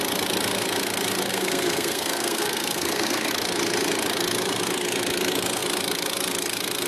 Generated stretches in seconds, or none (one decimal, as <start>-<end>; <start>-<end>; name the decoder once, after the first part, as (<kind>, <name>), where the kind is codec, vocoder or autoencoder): 1.3-3.3 (codec, SNAC)

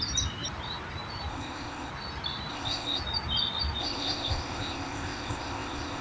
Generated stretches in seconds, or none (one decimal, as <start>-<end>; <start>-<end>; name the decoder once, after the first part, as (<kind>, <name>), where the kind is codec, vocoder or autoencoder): 1.3-1.9 (codec, ZipCodec); 2.5-3.0; 3.8-6.0

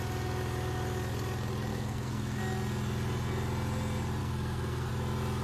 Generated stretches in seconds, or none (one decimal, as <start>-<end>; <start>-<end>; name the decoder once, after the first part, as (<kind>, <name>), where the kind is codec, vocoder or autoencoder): 1.7-2.4 (codec, SNAC); 4.2-4.9

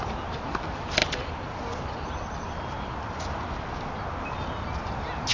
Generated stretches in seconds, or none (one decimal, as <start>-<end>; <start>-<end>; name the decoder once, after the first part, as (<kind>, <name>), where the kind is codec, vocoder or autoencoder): none

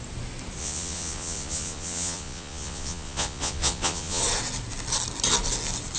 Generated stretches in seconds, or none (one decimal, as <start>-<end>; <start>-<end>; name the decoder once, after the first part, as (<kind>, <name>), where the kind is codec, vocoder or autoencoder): 0.6-4.2 (vocoder, Vocos)

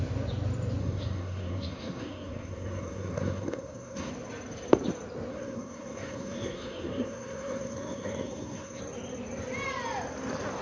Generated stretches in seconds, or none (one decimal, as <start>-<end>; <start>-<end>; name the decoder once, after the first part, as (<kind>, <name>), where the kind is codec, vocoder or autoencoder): 0.8-4.1 (codec, SNAC); 5.3-8.8

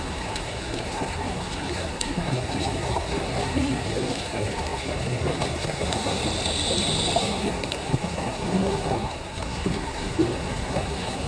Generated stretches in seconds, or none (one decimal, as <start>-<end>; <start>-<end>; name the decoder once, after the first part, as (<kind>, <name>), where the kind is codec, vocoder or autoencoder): 0.0-6.2 (codec, SNAC); 7.2-11.3

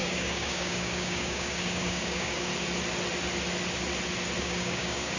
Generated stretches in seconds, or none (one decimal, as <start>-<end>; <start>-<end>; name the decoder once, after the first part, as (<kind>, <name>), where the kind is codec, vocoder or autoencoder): 0.0-2.5 (codec, DAC); 4.4-5.2